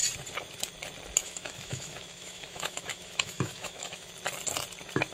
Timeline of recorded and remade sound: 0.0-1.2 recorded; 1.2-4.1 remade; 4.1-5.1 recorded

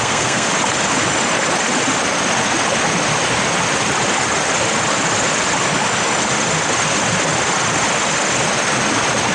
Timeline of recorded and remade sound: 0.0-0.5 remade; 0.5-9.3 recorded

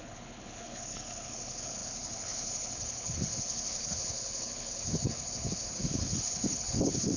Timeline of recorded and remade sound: 0.0-7.2 remade

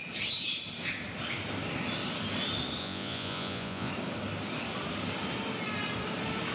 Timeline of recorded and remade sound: 0.0-2.8 recorded; 2.8-3.9 remade; 3.9-6.5 recorded

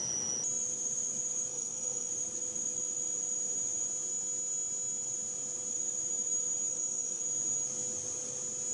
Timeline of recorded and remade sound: 0.0-1.5 recorded; 1.5-2.1 remade; 2.1-6.7 recorded; 6.7-7.2 remade; 7.2-8.7 recorded